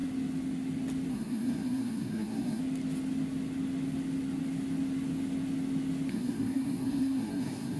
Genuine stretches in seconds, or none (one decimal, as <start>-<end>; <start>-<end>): 0.0-1.1; 2.6-6.1